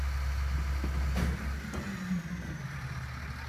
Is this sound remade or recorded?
recorded